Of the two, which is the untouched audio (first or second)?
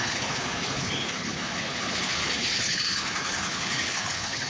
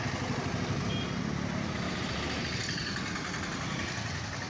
second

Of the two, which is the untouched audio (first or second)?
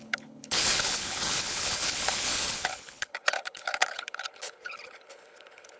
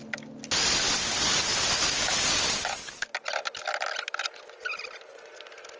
second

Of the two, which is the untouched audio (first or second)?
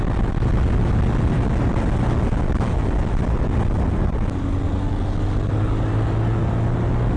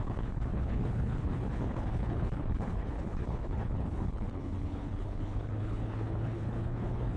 first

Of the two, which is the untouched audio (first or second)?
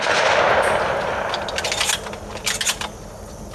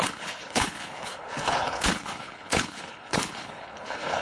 first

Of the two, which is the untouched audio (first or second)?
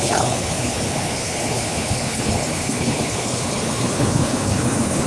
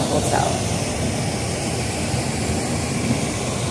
second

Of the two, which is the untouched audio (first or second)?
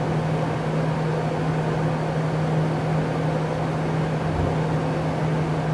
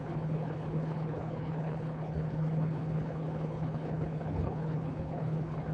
first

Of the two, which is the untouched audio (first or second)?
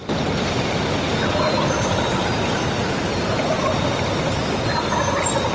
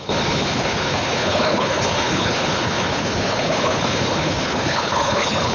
first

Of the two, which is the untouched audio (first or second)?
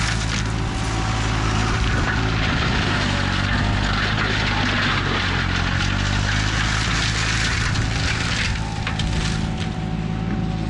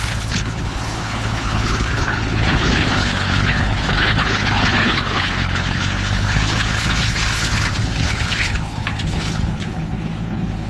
first